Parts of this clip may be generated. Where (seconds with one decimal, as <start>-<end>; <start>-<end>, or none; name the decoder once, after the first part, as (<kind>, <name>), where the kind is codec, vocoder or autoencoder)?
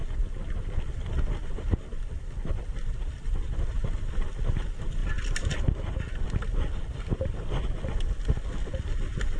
none